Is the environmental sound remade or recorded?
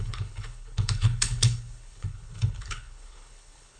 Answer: remade